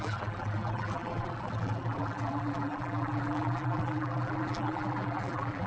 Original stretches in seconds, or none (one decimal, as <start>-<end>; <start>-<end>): none